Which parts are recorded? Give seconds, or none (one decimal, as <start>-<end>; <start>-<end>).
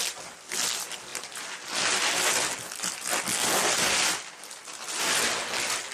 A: 0.0-5.9